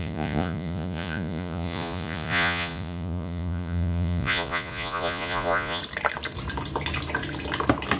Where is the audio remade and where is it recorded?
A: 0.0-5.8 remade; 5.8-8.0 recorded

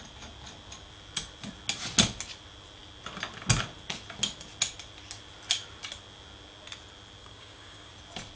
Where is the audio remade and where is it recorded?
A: 0.0-7.2 recorded; 7.2-7.9 remade; 7.9-8.4 recorded

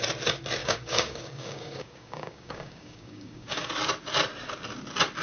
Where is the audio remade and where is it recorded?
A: 0.0-0.6 recorded; 0.6-3.7 remade; 3.7-5.2 recorded

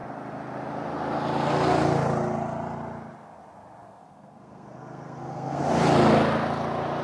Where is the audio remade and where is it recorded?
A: 0.0-3.8 recorded; 3.8-5.6 remade; 5.6-7.0 recorded